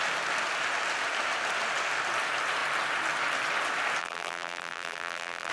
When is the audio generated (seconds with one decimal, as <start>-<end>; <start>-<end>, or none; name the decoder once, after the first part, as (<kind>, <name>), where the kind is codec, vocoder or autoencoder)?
4.0-5.5 (vocoder, BigVGAN v2)